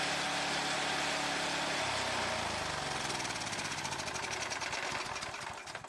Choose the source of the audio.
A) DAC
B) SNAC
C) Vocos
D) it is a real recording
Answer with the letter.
D